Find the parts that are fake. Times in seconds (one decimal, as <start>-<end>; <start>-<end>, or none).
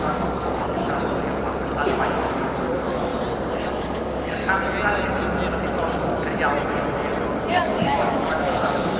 0.0-0.8; 2.1-3.1; 3.6-4.4; 7.5-9.0